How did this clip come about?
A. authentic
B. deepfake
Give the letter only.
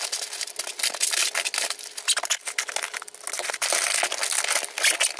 A